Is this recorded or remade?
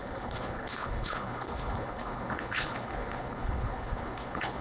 remade